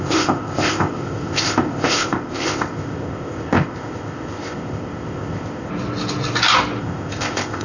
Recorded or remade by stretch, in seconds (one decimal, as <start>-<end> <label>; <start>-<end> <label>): 0.0-5.7 remade; 5.7-6.8 recorded; 6.8-7.6 remade